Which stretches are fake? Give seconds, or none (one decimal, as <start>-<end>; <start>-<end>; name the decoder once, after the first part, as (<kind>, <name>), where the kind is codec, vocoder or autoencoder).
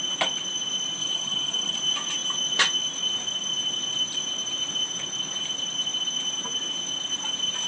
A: 1.0-1.8 (vocoder, HiFi-GAN)